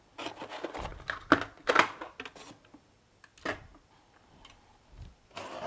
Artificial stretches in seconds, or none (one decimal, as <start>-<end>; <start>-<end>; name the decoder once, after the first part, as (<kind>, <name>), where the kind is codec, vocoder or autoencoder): none